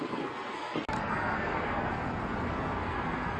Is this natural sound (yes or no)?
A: no